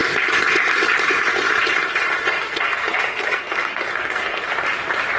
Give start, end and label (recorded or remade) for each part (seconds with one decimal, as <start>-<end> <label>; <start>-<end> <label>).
0.0-2.4 recorded; 2.4-4.5 remade; 4.5-5.2 recorded